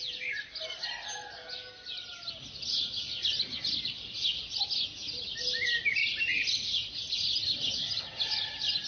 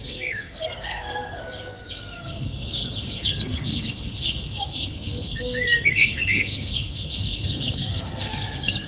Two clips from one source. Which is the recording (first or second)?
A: first